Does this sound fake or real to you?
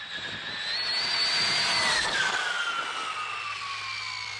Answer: real